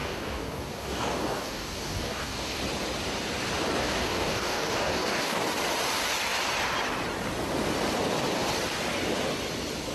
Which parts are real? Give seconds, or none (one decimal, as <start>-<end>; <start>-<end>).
2.6-3.8; 5.4-9.9